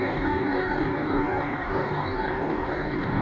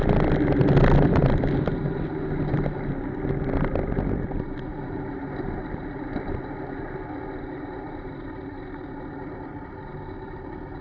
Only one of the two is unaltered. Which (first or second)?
second